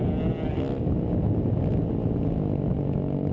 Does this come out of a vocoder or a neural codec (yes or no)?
no